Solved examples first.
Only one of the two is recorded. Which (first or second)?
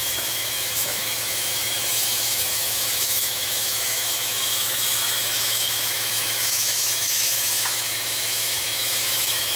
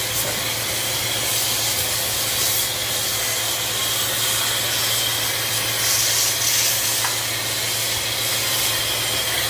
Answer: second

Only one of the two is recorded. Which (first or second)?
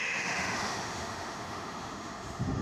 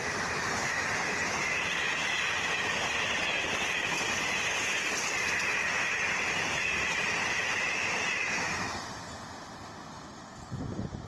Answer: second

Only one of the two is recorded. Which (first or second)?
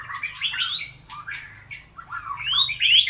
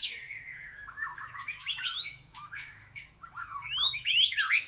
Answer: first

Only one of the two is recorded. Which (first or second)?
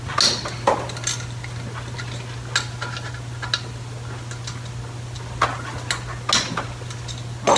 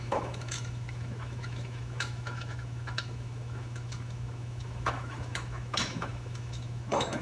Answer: first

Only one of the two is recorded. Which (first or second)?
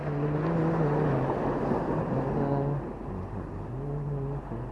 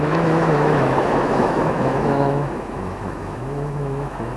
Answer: first